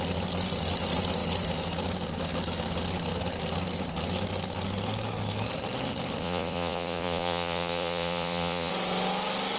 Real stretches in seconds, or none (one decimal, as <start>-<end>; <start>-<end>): 0.0-6.2; 8.7-9.6

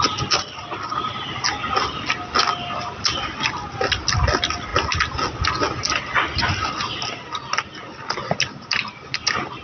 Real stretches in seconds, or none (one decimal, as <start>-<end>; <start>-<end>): 0.0-9.6

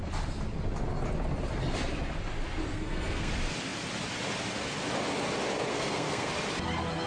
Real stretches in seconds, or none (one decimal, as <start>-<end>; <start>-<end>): 0.0-2.7; 3.3-5.7; 6.3-7.1